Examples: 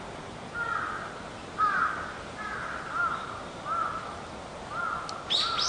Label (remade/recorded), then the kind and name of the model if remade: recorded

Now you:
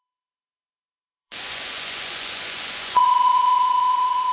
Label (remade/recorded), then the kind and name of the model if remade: remade, vocoder, Vocos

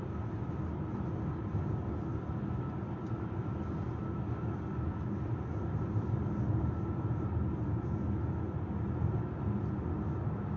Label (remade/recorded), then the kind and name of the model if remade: recorded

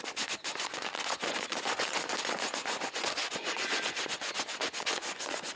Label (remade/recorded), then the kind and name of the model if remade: remade, vocoder, Vocos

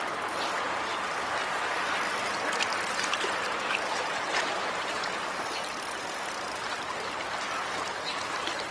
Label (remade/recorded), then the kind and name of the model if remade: recorded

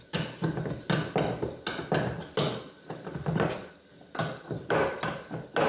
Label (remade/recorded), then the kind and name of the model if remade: recorded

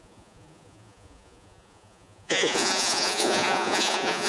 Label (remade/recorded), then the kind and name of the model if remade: remade, vocoder, Vocos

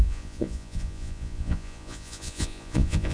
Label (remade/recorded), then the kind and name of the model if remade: remade, vocoder, Vocos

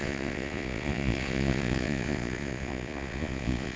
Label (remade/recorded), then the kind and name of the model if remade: remade, vocoder, Vocos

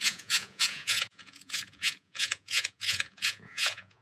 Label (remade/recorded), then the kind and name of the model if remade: remade, vocoder, Vocos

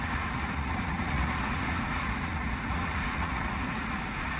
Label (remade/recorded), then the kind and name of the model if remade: remade, vocoder, Vocos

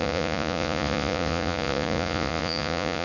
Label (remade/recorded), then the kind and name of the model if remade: remade, vocoder, Vocos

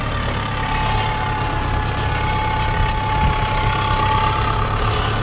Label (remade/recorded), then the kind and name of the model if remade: recorded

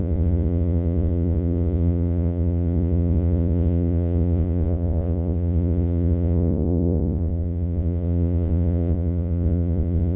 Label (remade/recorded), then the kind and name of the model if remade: remade, vocoder, Vocos